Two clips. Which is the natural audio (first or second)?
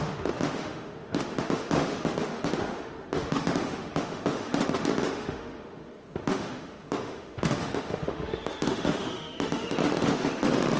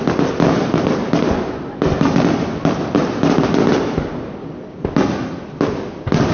second